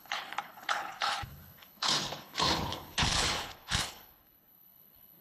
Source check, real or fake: fake